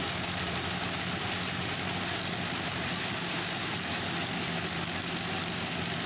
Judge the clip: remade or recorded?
recorded